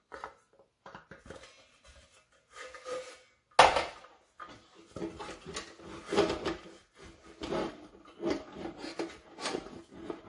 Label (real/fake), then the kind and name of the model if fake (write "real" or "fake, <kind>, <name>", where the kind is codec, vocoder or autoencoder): real